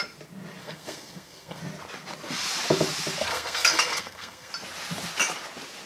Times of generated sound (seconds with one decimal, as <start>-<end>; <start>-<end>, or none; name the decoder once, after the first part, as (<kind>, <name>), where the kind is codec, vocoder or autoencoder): 0.6-1.6 (codec, SNAC); 3.3-4.5